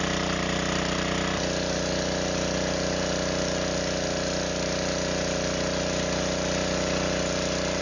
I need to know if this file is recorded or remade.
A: recorded